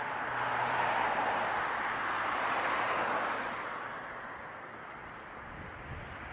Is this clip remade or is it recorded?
recorded